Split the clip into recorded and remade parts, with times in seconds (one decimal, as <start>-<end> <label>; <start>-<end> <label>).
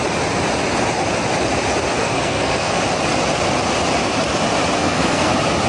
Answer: 0.0-2.0 recorded; 2.0-2.8 remade; 2.8-4.8 recorded; 4.8-5.3 remade; 5.3-5.7 recorded